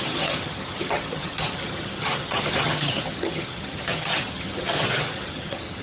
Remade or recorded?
remade